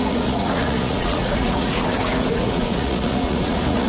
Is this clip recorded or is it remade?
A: remade